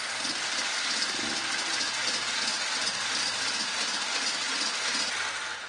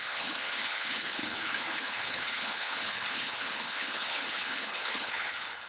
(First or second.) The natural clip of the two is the first